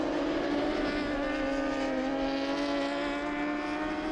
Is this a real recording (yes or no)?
yes